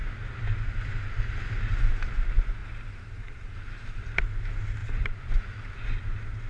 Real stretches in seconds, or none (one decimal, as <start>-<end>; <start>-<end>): 0.0-2.6; 4.2-4.8; 5.3-6.5